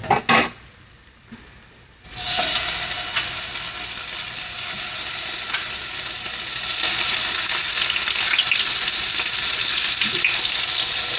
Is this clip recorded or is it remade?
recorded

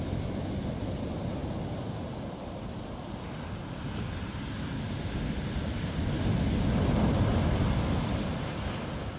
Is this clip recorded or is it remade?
recorded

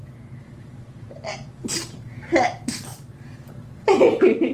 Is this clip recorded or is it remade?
remade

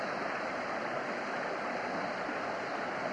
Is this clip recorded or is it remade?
remade